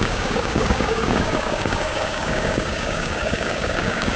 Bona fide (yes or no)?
no